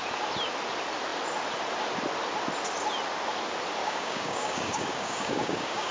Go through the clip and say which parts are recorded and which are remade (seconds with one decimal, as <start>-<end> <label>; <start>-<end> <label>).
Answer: 0.0-3.8 recorded; 3.8-5.9 remade